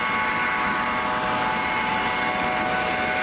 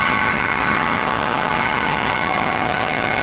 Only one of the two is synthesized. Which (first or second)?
second